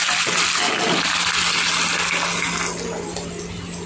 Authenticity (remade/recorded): recorded